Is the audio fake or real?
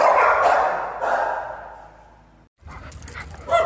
real